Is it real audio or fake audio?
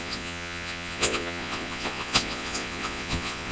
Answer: fake